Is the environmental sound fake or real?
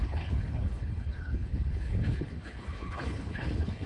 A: fake